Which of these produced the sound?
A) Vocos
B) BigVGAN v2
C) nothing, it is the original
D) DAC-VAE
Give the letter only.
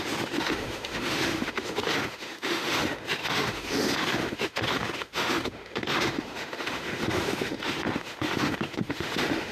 D